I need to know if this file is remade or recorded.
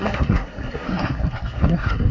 remade